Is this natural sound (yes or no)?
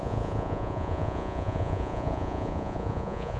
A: no